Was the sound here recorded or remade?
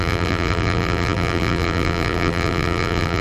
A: remade